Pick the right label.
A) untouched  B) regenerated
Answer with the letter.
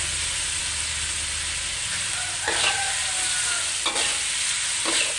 A